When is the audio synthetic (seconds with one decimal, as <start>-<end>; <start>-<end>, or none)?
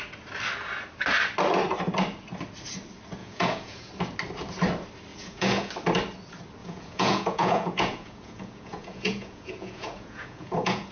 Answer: 3.2-3.9; 5.1-5.7; 6.6-10.9